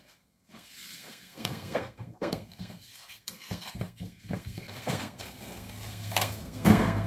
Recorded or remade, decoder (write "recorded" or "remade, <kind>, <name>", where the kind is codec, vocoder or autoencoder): remade, codec, SNAC